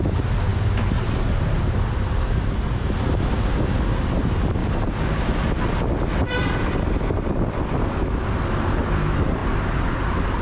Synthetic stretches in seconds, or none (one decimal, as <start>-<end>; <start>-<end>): none